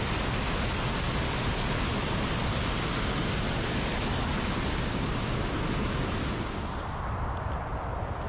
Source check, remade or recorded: recorded